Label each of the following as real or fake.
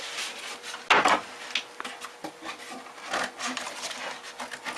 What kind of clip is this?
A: real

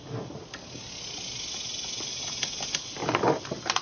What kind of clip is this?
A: real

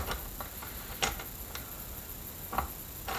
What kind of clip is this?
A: real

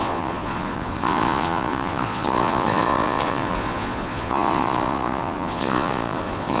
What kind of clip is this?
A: fake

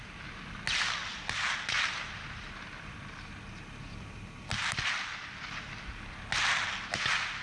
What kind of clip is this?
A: real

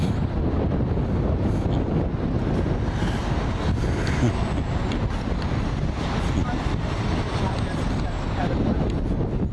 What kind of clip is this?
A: real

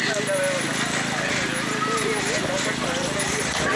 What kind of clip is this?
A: real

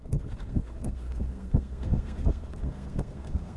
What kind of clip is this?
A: fake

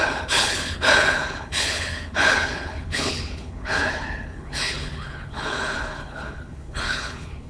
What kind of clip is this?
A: fake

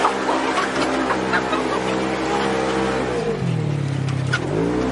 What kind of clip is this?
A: real